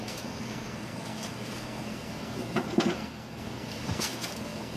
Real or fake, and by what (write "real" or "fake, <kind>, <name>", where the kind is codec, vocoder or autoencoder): fake, codec, SNAC